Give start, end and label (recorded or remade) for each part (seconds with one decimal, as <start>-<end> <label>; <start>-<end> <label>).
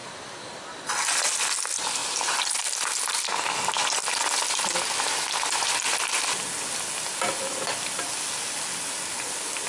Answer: 0.0-1.3 remade; 1.3-9.7 recorded